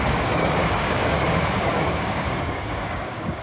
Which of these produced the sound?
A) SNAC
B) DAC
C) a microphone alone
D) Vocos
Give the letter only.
B